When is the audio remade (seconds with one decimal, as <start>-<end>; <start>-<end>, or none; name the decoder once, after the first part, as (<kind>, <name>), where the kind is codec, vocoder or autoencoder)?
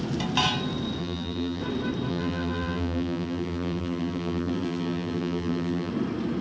1.0-1.6 (vocoder, BigVGAN v2); 2.1-5.9